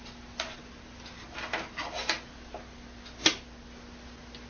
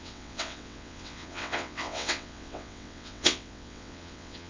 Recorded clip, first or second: first